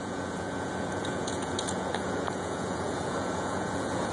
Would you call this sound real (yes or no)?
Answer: no